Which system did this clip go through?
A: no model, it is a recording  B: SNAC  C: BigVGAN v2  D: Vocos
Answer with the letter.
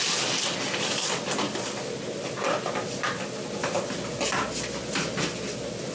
A